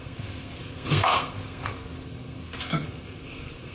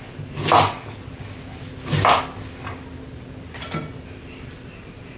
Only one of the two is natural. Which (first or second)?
second